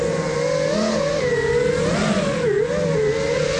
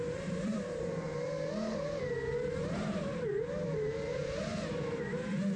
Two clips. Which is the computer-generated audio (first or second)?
second